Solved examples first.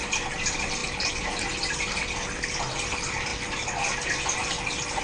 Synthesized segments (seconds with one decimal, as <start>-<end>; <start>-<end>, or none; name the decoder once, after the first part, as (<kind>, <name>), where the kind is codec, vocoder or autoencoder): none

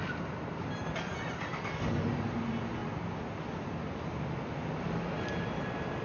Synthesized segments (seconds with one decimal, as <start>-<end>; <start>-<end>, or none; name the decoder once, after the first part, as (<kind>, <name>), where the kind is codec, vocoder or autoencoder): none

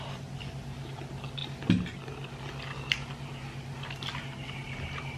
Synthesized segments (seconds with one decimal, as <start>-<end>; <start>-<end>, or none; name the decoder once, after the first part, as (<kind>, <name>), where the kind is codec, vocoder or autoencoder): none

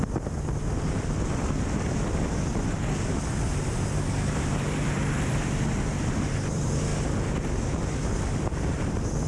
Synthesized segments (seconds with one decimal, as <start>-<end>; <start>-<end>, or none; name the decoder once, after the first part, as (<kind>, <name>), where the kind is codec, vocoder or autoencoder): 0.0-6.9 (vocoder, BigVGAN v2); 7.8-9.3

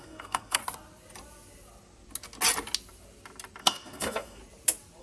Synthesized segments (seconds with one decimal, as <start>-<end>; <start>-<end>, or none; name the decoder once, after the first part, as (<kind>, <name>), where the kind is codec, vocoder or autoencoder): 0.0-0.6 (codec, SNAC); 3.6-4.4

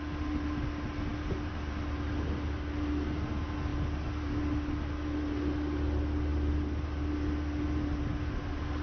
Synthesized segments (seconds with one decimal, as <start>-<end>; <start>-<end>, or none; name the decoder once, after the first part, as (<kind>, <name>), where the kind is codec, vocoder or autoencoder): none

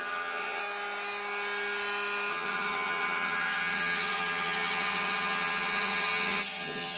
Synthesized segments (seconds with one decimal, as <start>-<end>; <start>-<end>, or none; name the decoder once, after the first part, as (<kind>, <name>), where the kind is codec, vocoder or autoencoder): 0.0-0.6 (vocoder, HiFi-GAN); 2.3-7.0

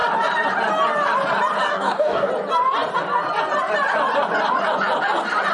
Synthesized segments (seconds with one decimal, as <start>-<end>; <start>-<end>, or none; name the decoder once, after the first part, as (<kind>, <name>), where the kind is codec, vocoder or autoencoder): 1.7-2.3 (codec, DAC)